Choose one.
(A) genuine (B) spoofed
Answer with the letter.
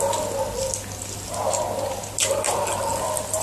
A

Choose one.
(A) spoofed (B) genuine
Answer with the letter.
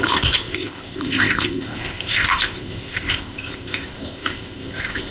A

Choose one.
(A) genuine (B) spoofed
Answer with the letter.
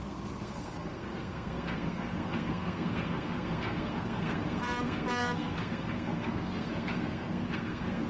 B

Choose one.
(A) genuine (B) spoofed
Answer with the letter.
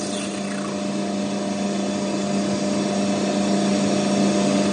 A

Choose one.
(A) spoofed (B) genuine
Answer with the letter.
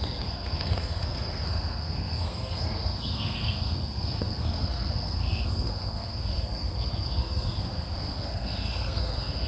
A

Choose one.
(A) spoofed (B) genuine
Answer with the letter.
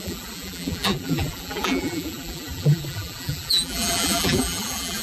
A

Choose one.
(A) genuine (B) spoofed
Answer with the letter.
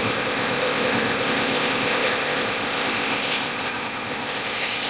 B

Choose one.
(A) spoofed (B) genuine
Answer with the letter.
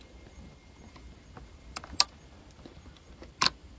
B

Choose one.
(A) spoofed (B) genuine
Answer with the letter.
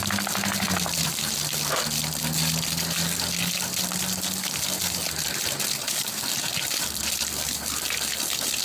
B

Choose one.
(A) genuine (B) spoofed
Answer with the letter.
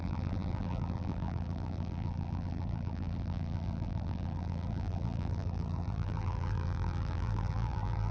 B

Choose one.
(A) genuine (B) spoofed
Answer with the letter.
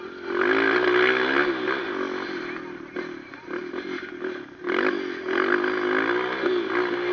A